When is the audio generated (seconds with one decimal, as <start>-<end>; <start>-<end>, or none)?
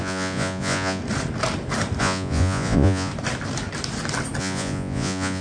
0.0-1.0; 2.0-3.1; 4.4-5.4